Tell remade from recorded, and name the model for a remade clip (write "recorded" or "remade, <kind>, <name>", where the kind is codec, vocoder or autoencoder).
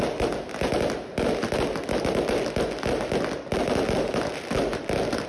recorded